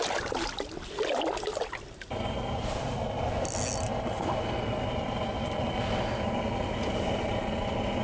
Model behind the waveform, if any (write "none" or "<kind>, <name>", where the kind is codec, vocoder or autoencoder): none